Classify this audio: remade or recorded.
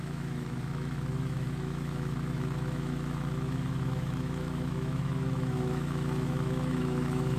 remade